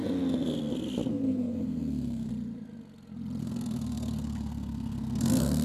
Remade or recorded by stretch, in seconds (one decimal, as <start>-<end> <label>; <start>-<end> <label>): 0.0-1.1 recorded; 1.1-2.3 remade; 2.3-3.4 recorded; 3.4-5.6 remade